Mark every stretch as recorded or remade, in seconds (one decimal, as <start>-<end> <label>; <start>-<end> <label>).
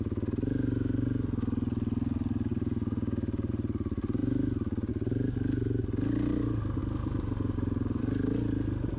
0.0-2.5 recorded; 2.5-3.5 remade; 3.5-6.8 recorded; 6.8-8.0 remade; 8.0-9.0 recorded